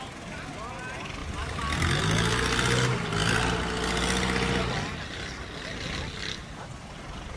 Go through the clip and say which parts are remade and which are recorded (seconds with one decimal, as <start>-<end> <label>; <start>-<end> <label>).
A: 0.0-1.2 recorded; 1.2-2.0 remade; 2.0-7.4 recorded